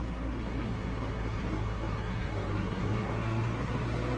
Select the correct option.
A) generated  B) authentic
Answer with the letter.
A